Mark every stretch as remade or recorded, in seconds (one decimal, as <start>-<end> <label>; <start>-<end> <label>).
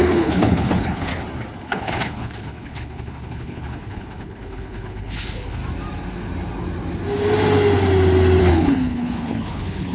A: 0.0-1.1 remade; 1.1-1.6 recorded; 1.6-5.6 remade; 5.6-8.4 recorded; 8.4-9.9 remade